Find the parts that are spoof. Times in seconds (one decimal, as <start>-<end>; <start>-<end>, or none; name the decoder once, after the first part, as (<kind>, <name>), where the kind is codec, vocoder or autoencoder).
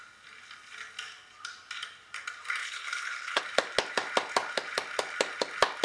2.6-3.4 (codec, HILCodec)